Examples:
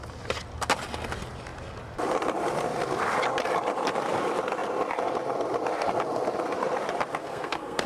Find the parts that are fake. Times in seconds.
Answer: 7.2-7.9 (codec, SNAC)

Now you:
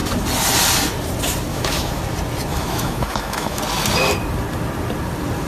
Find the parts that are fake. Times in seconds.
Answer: 1.5-2.0 (autoencoder, DAC-VAE); 2.5-3.6

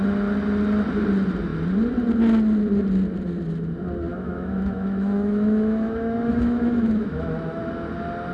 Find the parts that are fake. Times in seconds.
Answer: 4.1-7.6 (autoencoder, DAC-VAE)

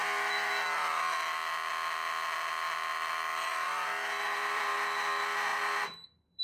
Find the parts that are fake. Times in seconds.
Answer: 2.9-4.6 (vocoder, BigVGAN v2); 5.5-6.4